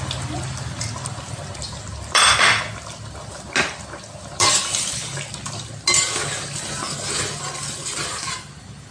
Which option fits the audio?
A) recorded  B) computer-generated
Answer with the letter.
A